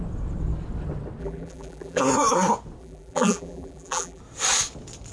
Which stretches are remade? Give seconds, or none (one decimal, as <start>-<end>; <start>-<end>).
1.2-2.0; 2.8-4.2